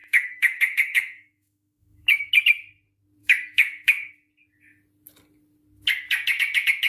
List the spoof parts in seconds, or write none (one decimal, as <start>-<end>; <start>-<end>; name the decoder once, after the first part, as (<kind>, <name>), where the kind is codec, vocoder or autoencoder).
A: 0.0-2.3 (autoencoder, DAC-VAE); 3.2-4.1